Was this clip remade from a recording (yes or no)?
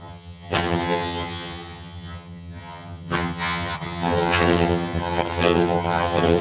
yes